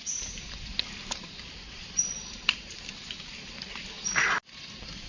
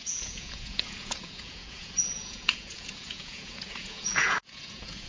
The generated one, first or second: second